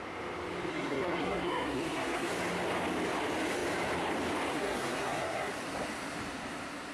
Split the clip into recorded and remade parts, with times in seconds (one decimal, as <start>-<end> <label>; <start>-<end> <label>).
0.0-0.7 recorded; 0.7-2.3 remade; 2.3-4.5 recorded; 4.5-5.5 remade; 5.5-6.9 recorded